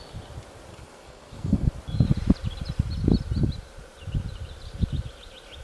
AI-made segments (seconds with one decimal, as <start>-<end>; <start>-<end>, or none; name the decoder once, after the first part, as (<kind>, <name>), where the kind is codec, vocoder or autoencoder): 0.7-1.7 (codec, SNAC)